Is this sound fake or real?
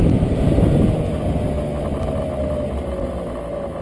real